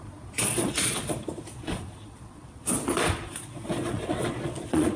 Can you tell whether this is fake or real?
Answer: fake